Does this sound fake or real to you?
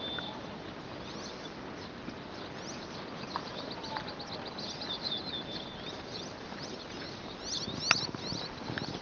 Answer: real